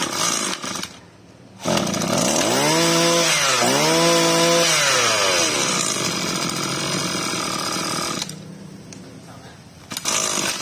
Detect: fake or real real